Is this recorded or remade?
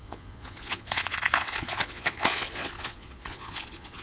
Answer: remade